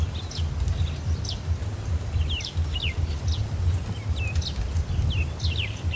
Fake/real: real